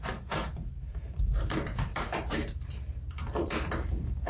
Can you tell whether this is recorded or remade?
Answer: remade